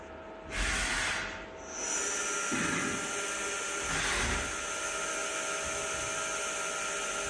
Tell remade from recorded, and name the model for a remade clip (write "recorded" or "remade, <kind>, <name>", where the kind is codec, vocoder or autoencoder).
recorded